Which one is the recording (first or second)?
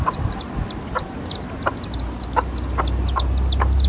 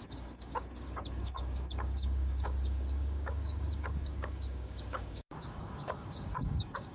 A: first